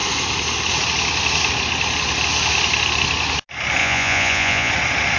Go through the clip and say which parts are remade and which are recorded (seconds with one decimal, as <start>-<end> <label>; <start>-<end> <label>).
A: 0.0-3.8 recorded; 3.8-4.7 remade; 4.7-5.2 recorded